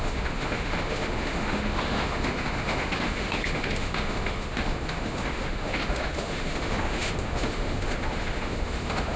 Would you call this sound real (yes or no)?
no